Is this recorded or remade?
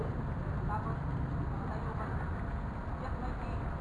recorded